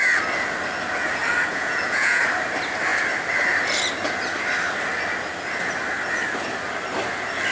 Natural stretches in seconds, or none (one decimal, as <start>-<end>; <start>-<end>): 0.0-1.5; 2.2-7.5